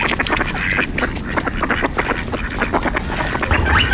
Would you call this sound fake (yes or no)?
no